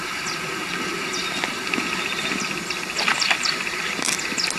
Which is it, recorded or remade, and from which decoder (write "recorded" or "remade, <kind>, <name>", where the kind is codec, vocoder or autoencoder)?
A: recorded